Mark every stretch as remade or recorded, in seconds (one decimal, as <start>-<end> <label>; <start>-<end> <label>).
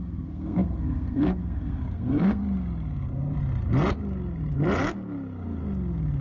0.0-2.4 remade; 2.4-6.2 recorded